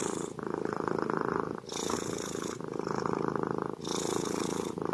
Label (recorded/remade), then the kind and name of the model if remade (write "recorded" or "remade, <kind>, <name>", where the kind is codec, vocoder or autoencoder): recorded